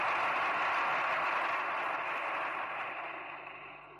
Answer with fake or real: real